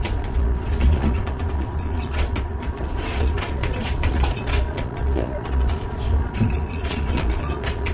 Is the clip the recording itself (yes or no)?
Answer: no